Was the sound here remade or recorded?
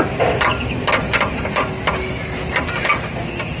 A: recorded